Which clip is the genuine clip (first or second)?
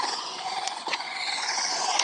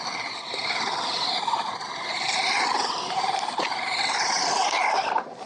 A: second